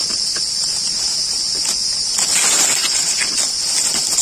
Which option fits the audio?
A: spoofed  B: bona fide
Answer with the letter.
B